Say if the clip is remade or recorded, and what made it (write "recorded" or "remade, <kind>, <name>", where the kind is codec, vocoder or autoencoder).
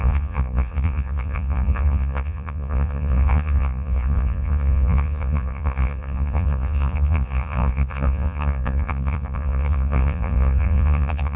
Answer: remade, vocoder, Vocos